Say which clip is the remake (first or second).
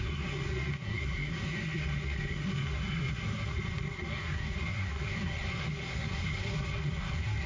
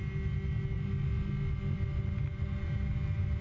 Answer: first